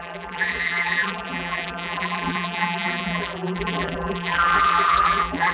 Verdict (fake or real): fake